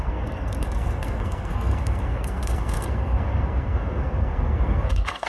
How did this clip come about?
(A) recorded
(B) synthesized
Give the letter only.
B